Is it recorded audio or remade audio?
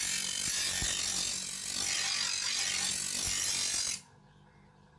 recorded